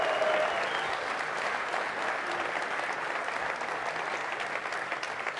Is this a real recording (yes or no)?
yes